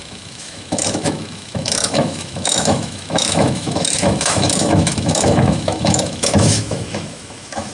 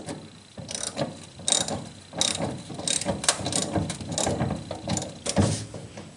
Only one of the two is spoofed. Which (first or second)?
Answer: first